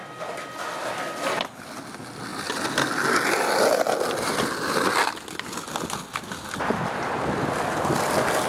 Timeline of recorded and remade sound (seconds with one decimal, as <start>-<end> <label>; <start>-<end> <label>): 0.0-8.5 recorded